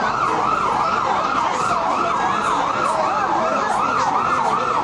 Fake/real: real